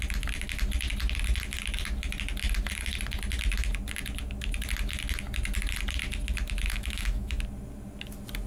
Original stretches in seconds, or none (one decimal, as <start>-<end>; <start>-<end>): 0.0-6.7; 7.4-8.5